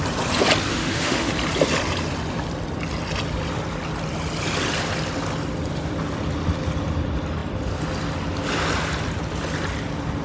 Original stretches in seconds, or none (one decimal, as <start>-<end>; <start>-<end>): 0.0-0.7; 1.3-10.2

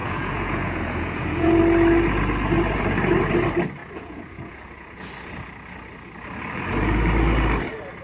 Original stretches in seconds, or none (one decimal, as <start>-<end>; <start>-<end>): 1.6-3.8; 5.1-8.0